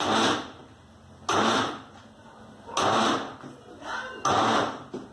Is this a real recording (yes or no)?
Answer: yes